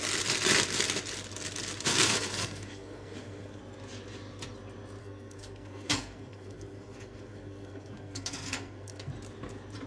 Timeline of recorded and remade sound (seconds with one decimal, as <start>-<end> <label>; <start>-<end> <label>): 0.0-1.9 recorded; 1.9-3.6 remade; 3.6-5.0 recorded; 5.0-9.1 remade; 9.1-9.9 recorded